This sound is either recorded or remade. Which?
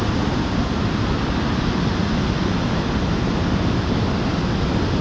recorded